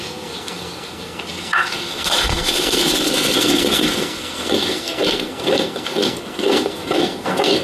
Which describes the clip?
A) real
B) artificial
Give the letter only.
B